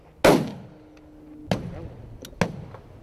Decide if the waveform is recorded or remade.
recorded